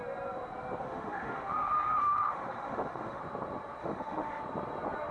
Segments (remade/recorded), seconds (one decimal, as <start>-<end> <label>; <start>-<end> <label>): 0.0-0.8 recorded; 0.8-3.2 remade; 3.2-3.8 recorded; 3.8-4.4 remade; 4.4-5.1 recorded